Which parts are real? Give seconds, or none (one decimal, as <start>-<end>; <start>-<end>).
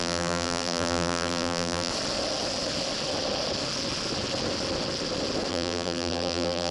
1.9-5.5